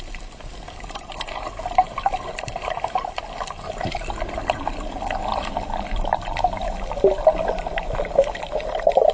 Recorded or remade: recorded